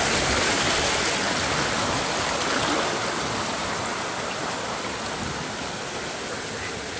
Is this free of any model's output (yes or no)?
yes